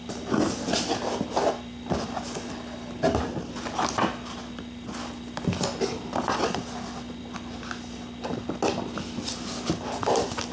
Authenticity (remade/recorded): recorded